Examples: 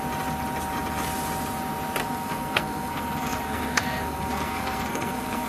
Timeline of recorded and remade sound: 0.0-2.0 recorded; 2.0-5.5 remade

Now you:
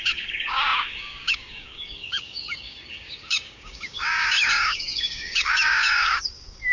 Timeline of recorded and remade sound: 0.0-6.7 remade